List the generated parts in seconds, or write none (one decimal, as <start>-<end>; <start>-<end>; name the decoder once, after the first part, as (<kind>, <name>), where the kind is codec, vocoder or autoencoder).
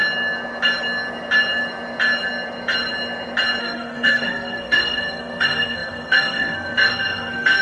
3.6-7.6 (codec, SNAC)